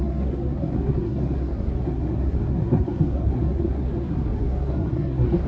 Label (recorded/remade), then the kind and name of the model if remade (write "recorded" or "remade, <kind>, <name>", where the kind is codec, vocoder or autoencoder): remade, codec, SNAC